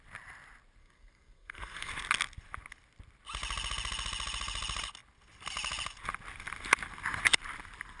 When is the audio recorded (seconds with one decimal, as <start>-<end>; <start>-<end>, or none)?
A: 0.0-0.8; 1.9-8.0